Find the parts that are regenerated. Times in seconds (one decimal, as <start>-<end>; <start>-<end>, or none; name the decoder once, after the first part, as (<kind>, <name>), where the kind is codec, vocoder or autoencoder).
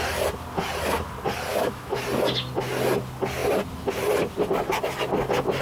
1.5-2.0 (autoencoder, DAC-VAE)